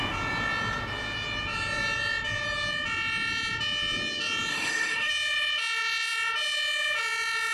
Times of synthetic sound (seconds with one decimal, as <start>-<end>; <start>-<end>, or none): 4.5-5.1